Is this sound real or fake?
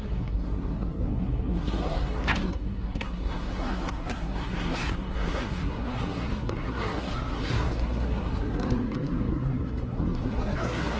fake